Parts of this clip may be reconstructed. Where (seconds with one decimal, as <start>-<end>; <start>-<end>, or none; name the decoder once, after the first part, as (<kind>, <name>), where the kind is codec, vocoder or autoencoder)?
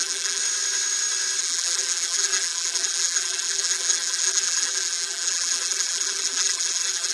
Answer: 0.0-0.4 (vocoder, BigVGAN v2); 1.4-7.1